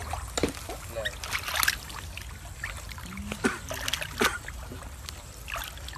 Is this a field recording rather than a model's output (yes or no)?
yes